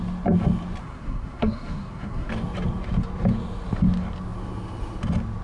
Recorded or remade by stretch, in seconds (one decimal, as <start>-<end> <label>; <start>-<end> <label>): 0.0-0.8 recorded; 0.8-2.3 remade; 2.3-5.4 recorded